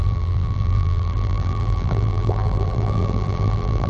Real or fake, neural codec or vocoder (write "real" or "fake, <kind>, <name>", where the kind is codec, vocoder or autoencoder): fake, vocoder, BigVGAN v2